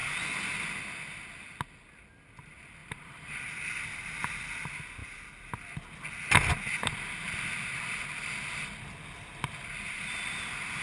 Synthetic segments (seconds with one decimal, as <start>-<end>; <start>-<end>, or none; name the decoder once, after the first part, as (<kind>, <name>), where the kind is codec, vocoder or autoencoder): 2.8-3.4 (vocoder, BigVGAN v2)